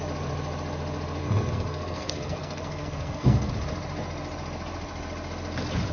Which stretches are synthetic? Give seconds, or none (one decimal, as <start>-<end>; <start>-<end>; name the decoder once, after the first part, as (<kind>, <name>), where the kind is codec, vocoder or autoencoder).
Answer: 1.2-3.5 (codec, SNAC)